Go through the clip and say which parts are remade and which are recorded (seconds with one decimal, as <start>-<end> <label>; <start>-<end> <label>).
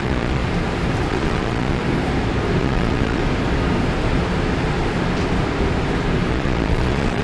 0.0-0.4 remade; 0.4-1.1 recorded; 1.1-1.8 remade; 1.8-2.6 recorded; 2.6-3.2 remade; 3.2-6.3 recorded; 6.3-7.2 remade